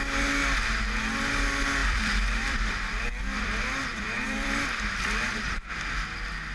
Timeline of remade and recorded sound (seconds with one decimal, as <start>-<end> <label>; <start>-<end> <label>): 0.0-1.8 recorded; 1.8-5.7 remade; 5.7-6.5 recorded